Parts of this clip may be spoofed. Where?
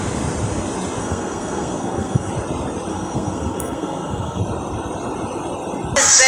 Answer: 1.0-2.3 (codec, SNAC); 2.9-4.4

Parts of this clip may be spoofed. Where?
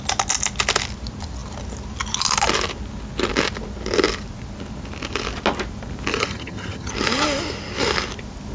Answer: 6.1-6.9 (vocoder, HiFi-GAN)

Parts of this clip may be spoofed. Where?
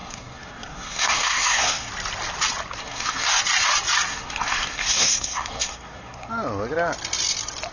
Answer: 0.0-1.9 (codec, SNAC); 2.8-3.4; 4.1-6.3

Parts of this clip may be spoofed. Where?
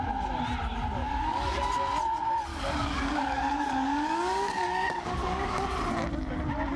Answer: 1.0-1.7 (codec, DAC); 2.5-5.6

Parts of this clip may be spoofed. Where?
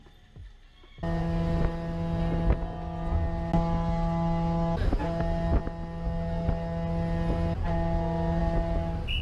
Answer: none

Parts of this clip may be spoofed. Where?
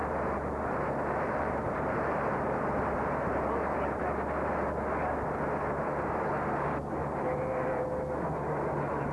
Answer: 0.0-4.0 (vocoder, BigVGAN v2); 7.0-7.8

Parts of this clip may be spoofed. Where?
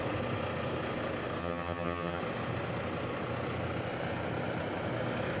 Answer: 1.4-2.2 (vocoder, HiFi-GAN)